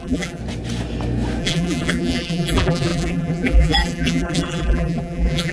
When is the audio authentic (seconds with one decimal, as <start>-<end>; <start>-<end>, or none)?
0.4-1.4